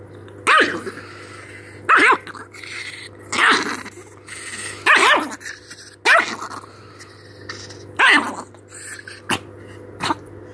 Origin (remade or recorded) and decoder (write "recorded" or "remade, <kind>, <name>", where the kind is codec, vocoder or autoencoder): recorded